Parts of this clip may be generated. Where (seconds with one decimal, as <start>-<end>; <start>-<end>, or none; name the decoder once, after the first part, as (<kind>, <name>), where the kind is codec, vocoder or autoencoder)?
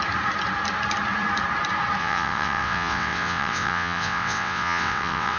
2.0-5.4 (vocoder, WaveNeXt)